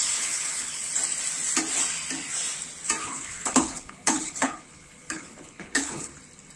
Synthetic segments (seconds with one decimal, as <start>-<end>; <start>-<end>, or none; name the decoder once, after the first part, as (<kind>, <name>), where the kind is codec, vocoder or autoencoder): 0.0-0.9 (codec, HILCodec); 3.0-6.1